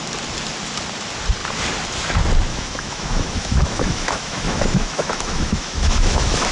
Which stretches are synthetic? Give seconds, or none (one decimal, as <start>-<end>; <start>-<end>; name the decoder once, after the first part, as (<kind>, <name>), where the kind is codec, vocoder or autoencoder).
2.5-6.5 (autoencoder, DAC-VAE)